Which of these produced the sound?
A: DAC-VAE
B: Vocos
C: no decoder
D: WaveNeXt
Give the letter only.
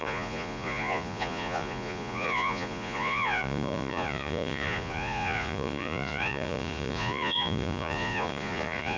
B